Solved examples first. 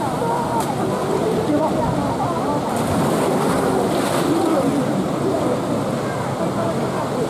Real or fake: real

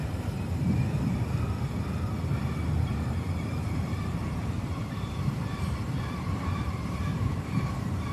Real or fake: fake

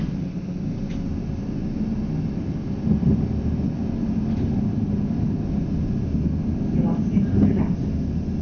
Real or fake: real